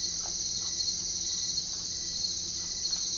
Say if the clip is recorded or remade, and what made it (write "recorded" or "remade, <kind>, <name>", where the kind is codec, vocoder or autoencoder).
recorded